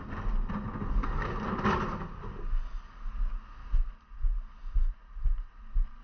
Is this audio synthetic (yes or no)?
no